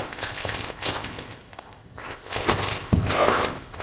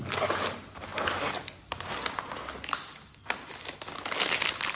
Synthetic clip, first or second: first